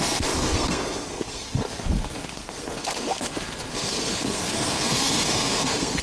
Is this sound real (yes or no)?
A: no